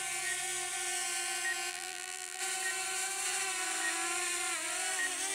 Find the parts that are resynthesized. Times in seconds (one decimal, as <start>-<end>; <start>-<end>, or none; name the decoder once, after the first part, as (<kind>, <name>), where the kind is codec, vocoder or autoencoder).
1.7-2.4 (vocoder, BigVGAN v2)